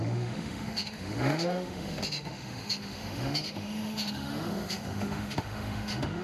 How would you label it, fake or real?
fake